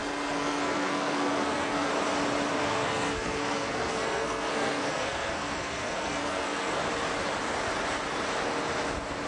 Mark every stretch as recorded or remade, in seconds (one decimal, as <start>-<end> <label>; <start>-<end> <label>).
0.0-1.9 remade; 1.9-2.6 recorded; 2.6-6.8 remade; 6.8-9.3 recorded